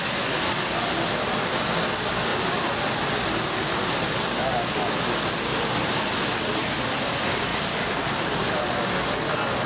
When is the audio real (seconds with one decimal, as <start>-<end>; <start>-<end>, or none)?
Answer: 0.0-2.3; 4.7-7.5; 8.7-9.7